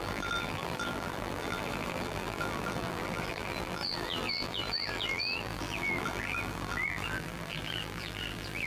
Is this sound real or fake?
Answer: fake